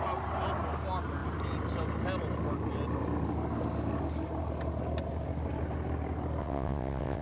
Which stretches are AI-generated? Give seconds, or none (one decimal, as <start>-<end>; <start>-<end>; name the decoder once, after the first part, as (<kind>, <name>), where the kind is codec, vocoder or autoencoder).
6.4-7.2 (vocoder, WaveNeXt)